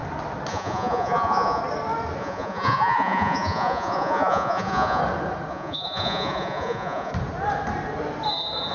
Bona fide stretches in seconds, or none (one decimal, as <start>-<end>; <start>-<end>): 0.0-0.5; 1.6-2.2; 5.0-5.5; 7.1-8.7